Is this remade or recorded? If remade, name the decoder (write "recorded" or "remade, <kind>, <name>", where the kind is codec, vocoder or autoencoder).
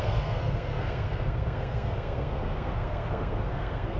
remade, codec, SNAC